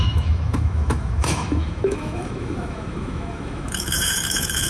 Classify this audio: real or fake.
fake